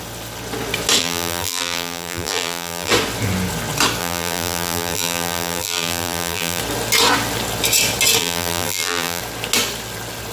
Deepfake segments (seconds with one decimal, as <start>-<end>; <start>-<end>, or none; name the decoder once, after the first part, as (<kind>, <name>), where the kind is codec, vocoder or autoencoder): 1.0-2.9 (vocoder, BigVGAN v2); 4.0-6.6; 8.2-9.2

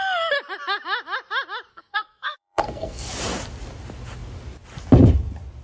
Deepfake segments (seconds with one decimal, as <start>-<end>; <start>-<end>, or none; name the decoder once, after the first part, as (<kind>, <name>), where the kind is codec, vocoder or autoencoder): 1.7-3.1 (codec, SNAC)

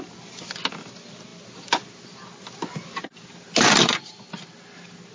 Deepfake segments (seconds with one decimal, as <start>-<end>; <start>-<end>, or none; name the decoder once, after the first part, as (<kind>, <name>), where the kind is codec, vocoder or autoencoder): none

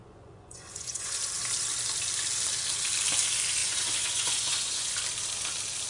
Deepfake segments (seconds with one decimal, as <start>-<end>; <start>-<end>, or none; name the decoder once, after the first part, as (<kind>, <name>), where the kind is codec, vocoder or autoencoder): 0.0-1.1 (vocoder, Vocos); 3.6-4.9

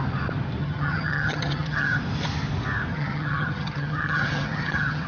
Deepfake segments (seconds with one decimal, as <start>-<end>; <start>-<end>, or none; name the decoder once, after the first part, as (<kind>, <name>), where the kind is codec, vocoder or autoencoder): 0.6-2.0 (vocoder, HiFi-GAN); 2.9-5.1

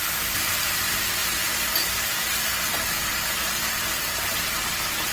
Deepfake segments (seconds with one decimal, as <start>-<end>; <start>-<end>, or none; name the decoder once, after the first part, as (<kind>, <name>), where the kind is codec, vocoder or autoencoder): none

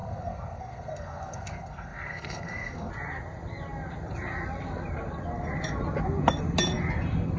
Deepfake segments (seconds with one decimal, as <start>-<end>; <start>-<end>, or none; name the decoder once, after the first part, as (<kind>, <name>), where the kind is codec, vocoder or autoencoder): 0.0-2.9 (codec, SNAC)

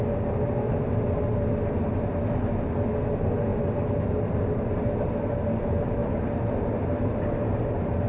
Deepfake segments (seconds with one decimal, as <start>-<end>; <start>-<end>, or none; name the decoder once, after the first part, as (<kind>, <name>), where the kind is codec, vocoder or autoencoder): none